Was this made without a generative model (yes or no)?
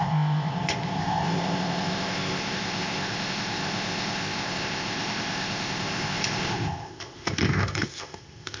no